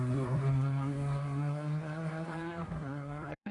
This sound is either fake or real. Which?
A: fake